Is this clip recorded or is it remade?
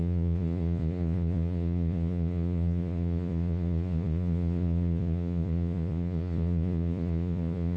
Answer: remade